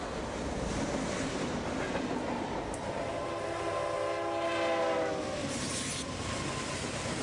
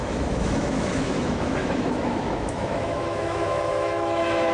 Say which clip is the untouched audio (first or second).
first